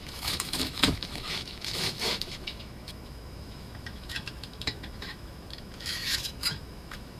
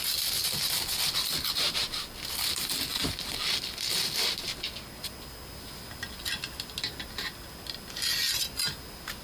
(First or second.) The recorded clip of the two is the second